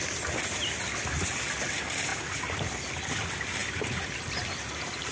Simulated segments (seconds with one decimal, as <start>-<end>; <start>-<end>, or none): none